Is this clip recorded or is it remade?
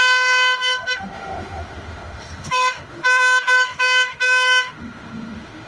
remade